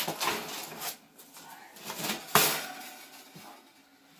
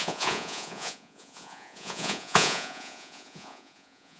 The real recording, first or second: first